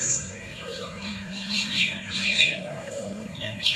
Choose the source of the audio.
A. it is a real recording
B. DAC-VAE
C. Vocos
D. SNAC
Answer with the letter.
D